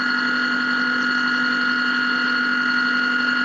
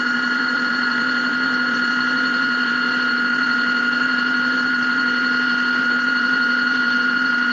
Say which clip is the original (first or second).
first